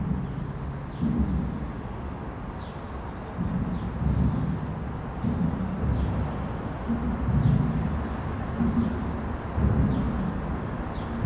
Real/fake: real